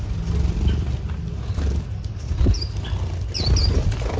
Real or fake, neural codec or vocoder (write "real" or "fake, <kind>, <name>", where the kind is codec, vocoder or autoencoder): real